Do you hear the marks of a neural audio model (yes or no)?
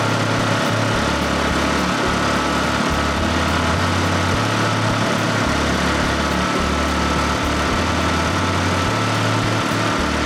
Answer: no